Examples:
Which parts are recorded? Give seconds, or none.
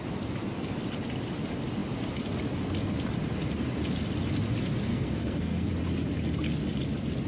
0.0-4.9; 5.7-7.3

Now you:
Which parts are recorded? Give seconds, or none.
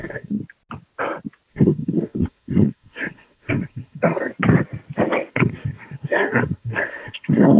0.4-1.5; 4.3-5.3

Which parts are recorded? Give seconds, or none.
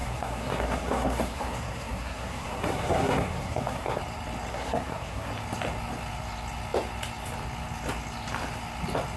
4.0-4.5; 5.3-9.2